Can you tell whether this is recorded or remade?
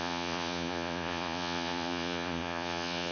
remade